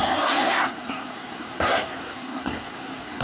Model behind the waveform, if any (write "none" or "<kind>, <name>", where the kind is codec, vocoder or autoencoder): codec, SNAC